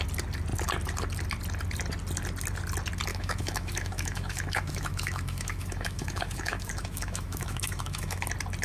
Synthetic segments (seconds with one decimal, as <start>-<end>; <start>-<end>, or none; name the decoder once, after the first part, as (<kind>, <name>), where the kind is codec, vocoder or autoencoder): 3.1-8.2 (autoencoder, DAC-VAE)